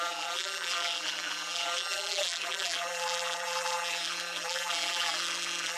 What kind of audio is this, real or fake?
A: fake